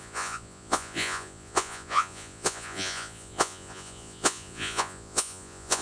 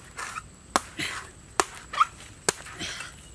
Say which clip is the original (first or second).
second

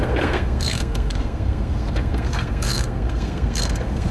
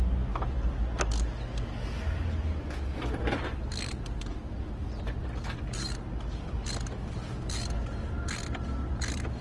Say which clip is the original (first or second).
second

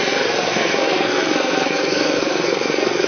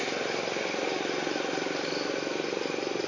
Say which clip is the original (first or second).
second